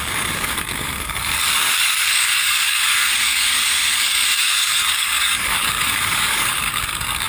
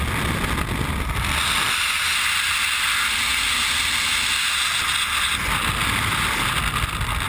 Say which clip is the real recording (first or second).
second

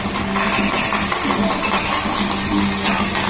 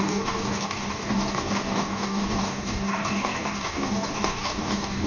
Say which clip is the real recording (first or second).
first